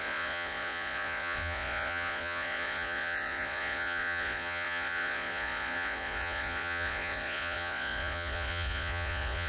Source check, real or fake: fake